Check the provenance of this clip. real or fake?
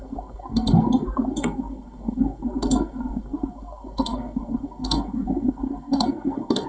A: fake